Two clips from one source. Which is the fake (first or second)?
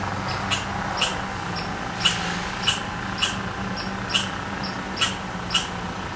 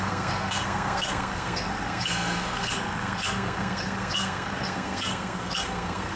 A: second